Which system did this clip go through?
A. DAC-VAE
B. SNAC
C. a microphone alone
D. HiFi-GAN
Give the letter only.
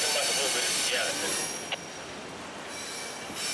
C